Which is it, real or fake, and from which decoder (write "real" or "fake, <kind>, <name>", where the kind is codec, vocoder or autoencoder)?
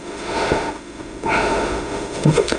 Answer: fake, autoencoder, DAC-VAE